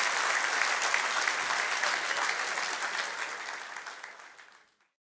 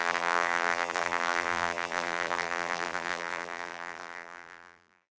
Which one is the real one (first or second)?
first